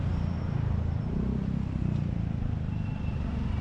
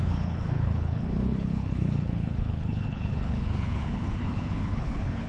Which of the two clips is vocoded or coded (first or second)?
second